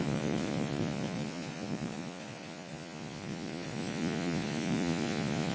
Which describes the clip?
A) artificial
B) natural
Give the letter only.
A